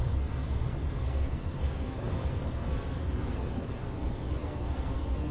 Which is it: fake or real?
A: fake